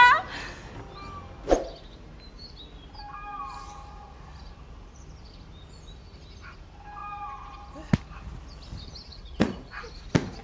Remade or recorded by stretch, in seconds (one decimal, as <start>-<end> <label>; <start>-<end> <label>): 0.0-9.1 recorded; 9.1-9.8 remade; 9.8-10.4 recorded